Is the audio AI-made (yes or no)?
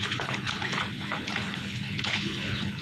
yes